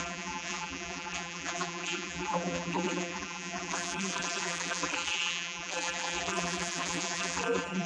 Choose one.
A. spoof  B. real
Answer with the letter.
A